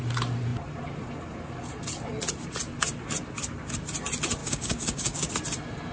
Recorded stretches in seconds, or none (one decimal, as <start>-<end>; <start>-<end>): 0.0-4.4; 5.3-5.9